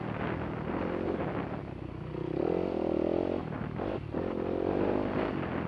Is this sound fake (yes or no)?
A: no